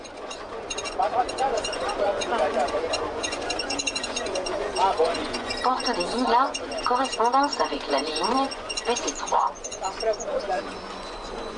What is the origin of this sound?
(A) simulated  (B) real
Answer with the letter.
A